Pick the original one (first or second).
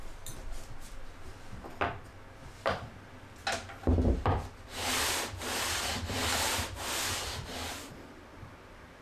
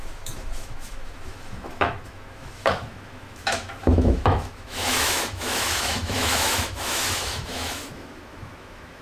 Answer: first